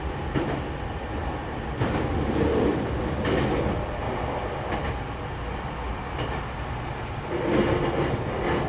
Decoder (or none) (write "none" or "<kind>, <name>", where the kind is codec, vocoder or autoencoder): none